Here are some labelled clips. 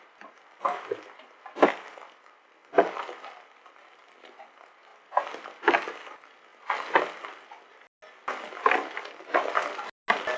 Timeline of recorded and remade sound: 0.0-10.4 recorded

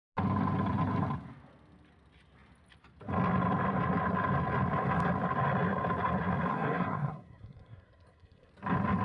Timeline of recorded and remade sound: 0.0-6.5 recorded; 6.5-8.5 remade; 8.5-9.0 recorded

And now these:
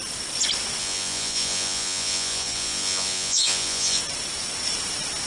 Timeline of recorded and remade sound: 0.0-0.8 recorded; 0.8-4.0 remade; 4.0-5.3 recorded

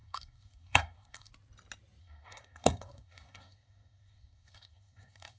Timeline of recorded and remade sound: 0.0-1.3 remade; 1.3-2.0 recorded; 2.0-5.4 remade

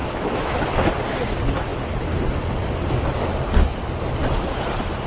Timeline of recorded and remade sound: 0.0-0.9 remade; 0.9-5.1 recorded